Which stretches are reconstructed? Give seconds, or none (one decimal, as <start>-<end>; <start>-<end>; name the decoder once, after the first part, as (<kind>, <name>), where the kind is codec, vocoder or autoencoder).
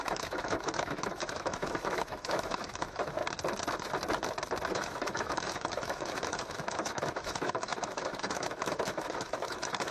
0.0-3.2 (autoencoder, DAC-VAE); 4.7-9.9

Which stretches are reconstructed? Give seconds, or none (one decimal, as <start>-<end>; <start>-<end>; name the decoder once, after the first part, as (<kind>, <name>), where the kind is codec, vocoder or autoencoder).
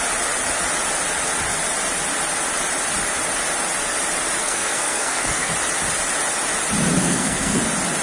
4.4-5.5 (codec, SNAC); 7.0-7.6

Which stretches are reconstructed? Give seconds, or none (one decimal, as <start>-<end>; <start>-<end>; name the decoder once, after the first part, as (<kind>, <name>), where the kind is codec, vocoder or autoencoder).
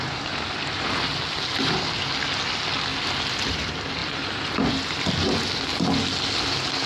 none